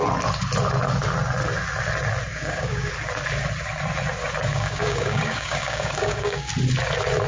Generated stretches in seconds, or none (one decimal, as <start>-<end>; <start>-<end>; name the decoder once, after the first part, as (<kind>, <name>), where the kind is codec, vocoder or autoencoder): 2.3-2.9 (codec, DAC); 4.5-6.5